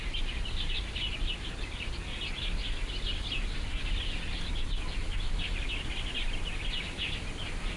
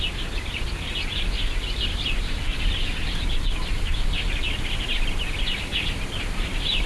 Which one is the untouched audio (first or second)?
first